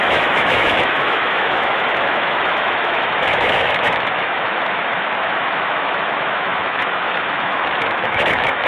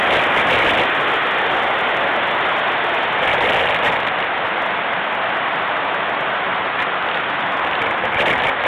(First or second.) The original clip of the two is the second